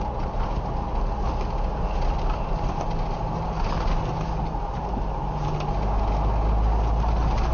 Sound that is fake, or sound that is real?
real